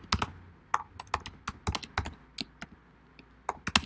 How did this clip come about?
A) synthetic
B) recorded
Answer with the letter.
B